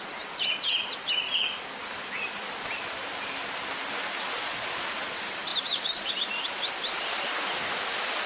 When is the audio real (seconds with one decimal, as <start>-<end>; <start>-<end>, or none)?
0.0-5.5; 6.1-8.3